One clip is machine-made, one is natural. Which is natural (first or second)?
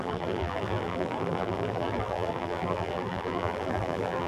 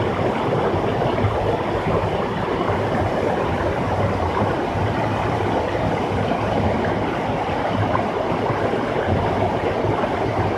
second